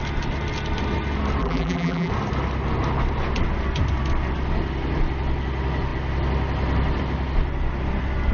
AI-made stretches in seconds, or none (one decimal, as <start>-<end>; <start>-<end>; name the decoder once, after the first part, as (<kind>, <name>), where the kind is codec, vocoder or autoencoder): 1.4-2.1 (vocoder, BigVGAN v2)